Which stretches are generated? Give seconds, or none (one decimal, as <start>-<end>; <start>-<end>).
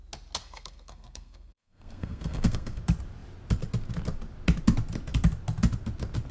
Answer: 0.4-2.8